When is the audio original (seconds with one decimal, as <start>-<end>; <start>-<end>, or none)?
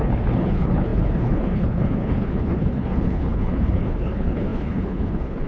none